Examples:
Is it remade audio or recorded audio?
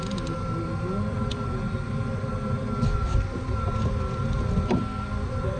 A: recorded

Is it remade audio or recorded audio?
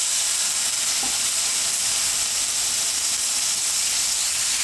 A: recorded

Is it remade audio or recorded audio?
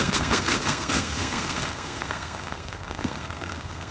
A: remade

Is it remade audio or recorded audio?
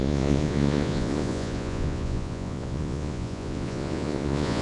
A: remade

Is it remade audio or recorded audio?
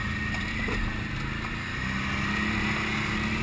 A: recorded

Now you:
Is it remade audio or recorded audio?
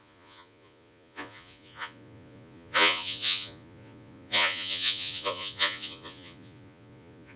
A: remade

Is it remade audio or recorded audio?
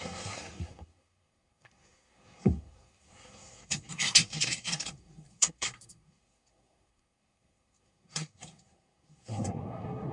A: remade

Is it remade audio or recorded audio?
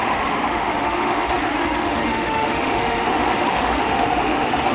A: remade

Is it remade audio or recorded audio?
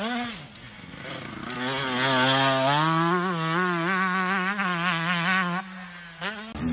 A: recorded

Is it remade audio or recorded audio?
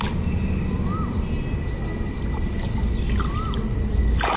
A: recorded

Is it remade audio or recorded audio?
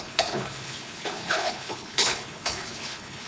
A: remade